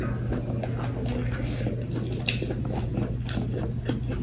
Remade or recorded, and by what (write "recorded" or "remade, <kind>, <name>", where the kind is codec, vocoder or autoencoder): recorded